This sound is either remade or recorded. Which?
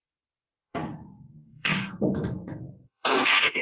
remade